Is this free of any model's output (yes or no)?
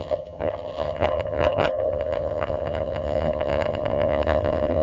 no